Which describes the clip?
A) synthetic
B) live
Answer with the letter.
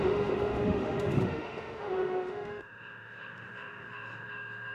A